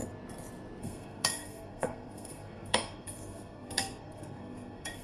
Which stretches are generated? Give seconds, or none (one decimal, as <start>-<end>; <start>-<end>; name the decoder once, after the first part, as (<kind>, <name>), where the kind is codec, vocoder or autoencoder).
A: 0.8-5.0 (codec, SNAC)